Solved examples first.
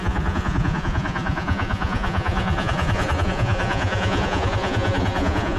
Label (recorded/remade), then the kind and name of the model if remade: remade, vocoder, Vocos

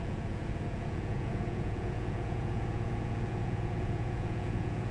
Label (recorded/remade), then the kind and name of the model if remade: remade, vocoder, Vocos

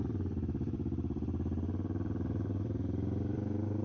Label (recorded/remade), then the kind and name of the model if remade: remade, vocoder, BigVGAN v2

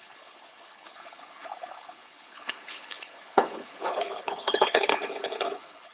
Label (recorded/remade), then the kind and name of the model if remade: remade, codec, HILCodec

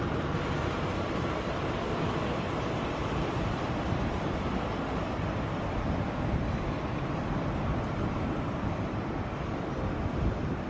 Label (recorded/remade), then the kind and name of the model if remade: remade, vocoder, BigVGAN v2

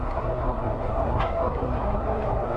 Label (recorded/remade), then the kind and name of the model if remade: remade, codec, SNAC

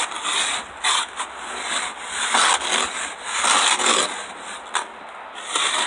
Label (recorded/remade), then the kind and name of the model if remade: recorded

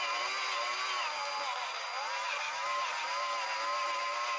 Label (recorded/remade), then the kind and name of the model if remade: recorded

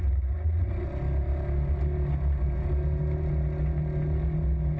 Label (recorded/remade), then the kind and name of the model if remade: recorded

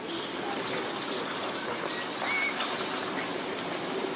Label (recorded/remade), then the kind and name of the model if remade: recorded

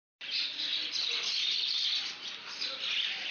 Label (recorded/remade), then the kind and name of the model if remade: recorded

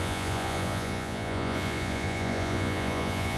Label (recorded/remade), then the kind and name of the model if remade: remade, vocoder, Vocos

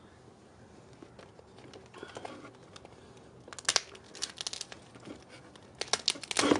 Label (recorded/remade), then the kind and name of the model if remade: recorded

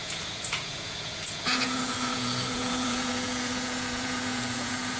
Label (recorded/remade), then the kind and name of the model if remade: remade, vocoder, Vocos